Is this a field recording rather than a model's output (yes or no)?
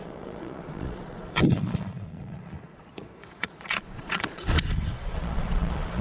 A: no